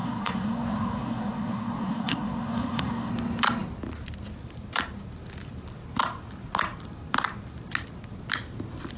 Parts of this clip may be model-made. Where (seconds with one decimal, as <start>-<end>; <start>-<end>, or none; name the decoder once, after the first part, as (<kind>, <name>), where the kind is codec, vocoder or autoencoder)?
0.0-3.1 (codec, SNAC)